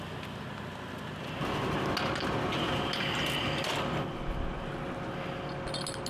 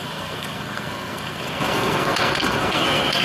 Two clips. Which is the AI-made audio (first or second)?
second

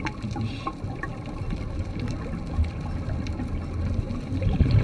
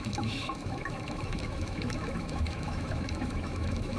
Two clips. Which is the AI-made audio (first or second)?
second